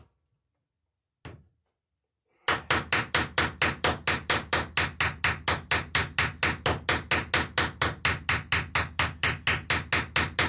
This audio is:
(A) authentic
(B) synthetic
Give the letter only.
A